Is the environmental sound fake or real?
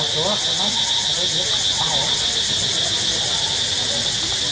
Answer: real